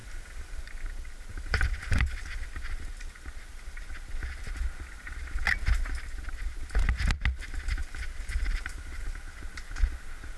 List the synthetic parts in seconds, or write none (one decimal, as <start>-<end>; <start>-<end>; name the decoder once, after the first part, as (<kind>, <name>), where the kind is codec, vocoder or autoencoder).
0.0-0.6 (vocoder, BigVGAN v2); 1.3-2.5; 7.8-9.4

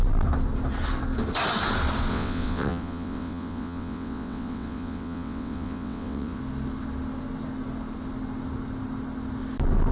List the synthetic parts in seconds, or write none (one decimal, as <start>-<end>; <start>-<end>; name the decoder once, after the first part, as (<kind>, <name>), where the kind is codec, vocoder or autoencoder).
2.1-6.4 (vocoder, WaveNeXt)

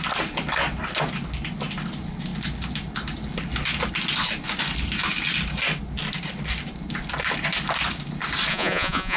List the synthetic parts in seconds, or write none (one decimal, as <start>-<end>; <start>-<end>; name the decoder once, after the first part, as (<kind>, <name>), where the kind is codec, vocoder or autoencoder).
8.5-9.2 (vocoder, Vocos)

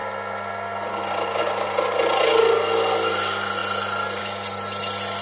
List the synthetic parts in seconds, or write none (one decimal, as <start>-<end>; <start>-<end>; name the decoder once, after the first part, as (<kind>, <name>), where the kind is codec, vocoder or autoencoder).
none